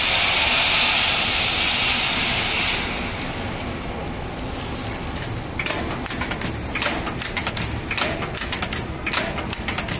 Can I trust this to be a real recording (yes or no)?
yes